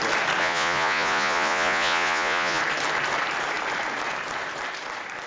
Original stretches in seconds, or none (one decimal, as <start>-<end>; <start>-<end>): 0.0-0.4; 2.6-5.3